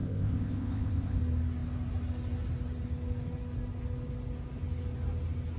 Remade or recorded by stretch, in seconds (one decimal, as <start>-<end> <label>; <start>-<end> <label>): 0.0-1.2 remade; 1.2-5.6 recorded